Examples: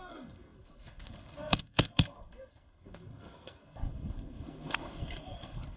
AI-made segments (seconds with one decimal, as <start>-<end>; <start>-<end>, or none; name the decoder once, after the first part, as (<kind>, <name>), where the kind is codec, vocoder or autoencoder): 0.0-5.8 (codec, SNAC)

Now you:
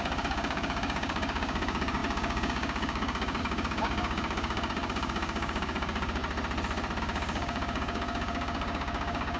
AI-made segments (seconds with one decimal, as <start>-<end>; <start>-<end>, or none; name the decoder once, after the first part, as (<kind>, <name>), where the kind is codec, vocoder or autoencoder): 0.0-6.2 (codec, DAC); 7.0-9.4

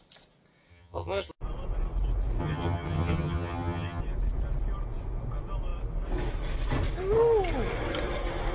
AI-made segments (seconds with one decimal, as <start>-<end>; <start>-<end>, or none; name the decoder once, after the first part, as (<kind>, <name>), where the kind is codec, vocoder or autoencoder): 0.7-1.3 (vocoder, HiFi-GAN); 2.4-4.0

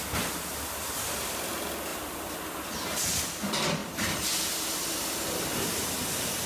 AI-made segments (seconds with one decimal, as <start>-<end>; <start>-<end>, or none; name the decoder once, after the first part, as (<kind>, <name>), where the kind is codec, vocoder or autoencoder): 1.9-2.4 (vocoder, BigVGAN v2); 3.8-5.1

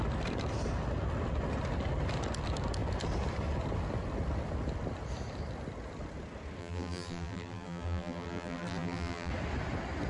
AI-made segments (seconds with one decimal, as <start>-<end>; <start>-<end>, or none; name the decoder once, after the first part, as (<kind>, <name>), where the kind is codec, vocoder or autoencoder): 6.6-9.3 (vocoder, BigVGAN v2)

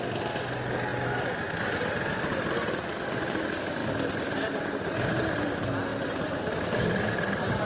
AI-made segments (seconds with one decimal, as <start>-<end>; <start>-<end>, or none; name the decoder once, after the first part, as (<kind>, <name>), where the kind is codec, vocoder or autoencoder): 5.9-6.4 (vocoder, BigVGAN v2)

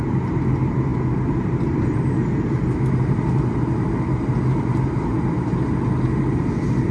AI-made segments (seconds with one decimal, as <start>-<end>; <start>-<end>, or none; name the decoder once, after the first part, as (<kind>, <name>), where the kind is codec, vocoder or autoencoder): none